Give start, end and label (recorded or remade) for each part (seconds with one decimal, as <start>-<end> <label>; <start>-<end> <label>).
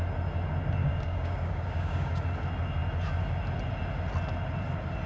0.0-0.8 recorded; 0.8-2.2 remade; 2.2-5.1 recorded